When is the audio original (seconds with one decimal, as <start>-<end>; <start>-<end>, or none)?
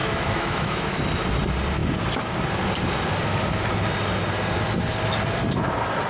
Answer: 1.0-6.1